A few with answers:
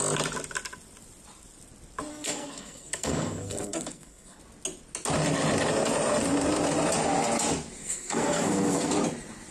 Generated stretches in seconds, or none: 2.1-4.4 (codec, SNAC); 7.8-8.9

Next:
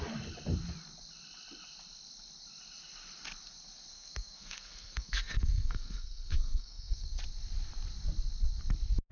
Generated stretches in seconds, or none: 3.9-7.2 (codec, SNAC)

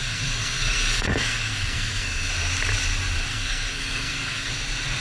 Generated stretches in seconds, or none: 0.0-2.3 (codec, SNAC); 3.3-4.5